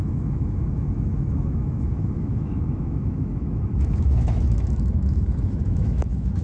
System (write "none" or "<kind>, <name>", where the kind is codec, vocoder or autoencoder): autoencoder, DAC-VAE